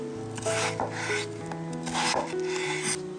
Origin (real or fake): real